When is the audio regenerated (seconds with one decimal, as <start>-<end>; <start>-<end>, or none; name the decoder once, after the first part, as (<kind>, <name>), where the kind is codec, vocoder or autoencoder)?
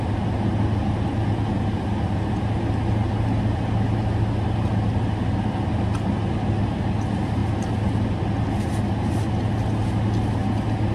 none